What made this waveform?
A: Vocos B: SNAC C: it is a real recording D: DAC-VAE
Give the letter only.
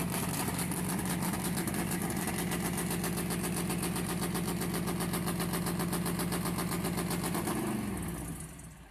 C